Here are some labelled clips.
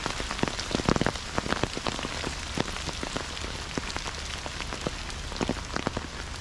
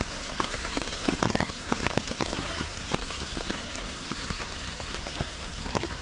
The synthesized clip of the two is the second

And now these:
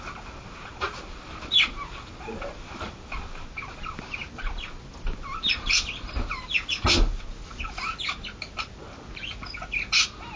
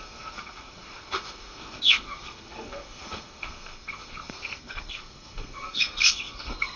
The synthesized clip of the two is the second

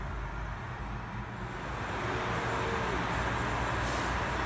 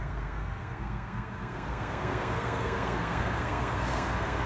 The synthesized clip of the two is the second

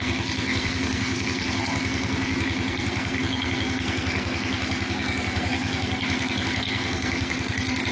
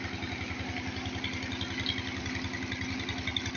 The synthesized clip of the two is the first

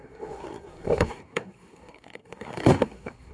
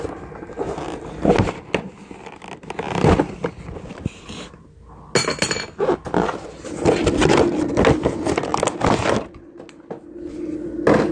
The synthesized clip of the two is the first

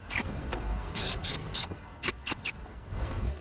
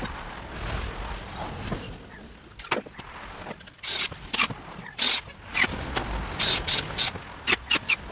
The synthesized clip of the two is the first